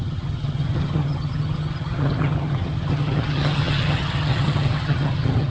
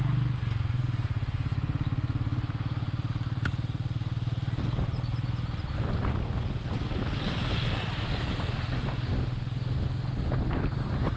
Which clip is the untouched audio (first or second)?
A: second